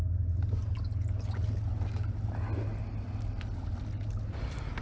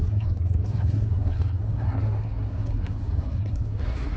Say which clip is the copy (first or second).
second